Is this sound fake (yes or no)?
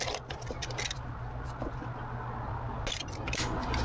no